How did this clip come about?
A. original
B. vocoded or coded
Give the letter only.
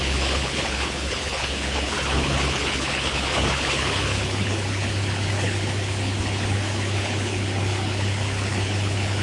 B